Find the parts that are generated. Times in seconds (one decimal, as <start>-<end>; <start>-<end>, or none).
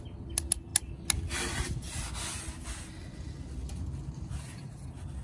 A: none